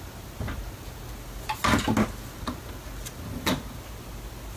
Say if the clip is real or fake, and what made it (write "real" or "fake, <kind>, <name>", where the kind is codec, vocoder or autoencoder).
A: real